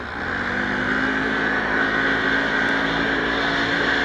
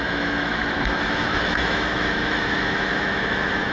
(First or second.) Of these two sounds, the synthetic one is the second